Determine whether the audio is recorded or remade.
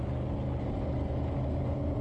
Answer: recorded